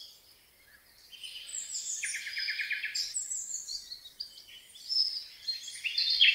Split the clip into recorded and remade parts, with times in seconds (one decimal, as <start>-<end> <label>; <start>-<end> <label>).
0.0-6.3 recorded